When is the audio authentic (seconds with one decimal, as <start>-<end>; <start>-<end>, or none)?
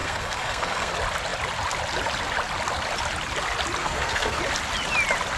0.9-3.8; 4.4-5.4